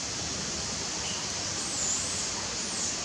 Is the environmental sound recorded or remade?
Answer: recorded